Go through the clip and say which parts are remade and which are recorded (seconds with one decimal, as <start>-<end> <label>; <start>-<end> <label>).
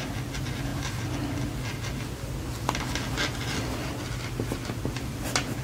0.0-5.6 recorded